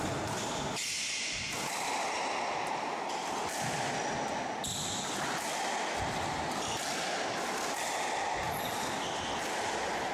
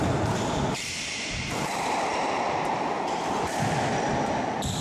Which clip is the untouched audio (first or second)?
first